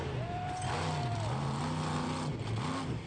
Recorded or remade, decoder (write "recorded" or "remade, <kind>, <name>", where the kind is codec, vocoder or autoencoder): recorded